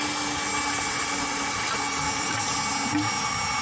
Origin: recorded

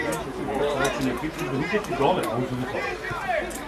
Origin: recorded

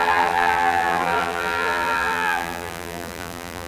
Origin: remade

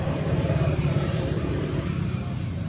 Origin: remade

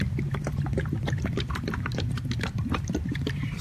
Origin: remade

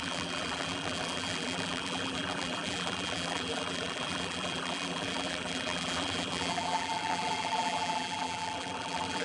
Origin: remade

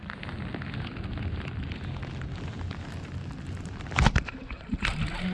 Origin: recorded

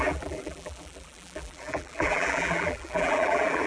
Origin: remade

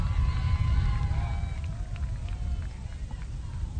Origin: recorded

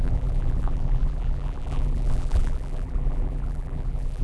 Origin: remade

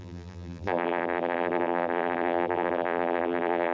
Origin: remade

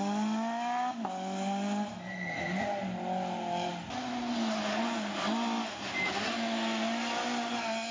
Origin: recorded